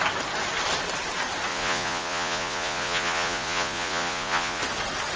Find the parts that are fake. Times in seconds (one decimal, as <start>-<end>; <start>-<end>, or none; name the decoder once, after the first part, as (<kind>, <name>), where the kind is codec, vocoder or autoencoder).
1.5-4.6 (vocoder, Vocos)